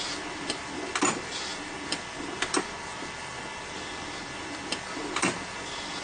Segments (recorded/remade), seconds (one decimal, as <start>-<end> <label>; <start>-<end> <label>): 0.0-6.0 recorded